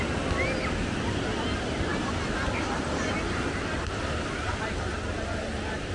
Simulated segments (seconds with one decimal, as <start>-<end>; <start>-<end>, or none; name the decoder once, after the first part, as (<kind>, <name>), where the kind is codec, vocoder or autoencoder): none